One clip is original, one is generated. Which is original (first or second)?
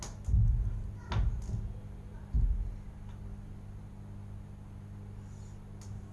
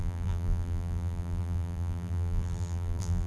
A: first